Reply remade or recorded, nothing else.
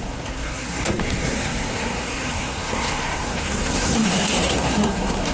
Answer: remade